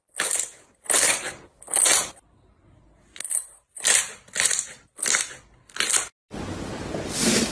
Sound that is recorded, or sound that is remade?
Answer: recorded